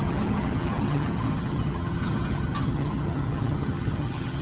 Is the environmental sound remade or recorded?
remade